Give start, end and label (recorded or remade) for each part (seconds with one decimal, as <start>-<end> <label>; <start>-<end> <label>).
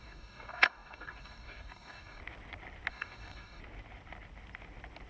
0.0-2.2 remade; 2.2-2.9 recorded; 2.9-3.6 remade; 3.6-5.1 recorded